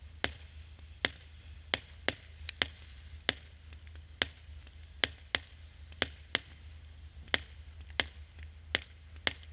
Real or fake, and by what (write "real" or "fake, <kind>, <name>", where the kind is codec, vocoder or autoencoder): real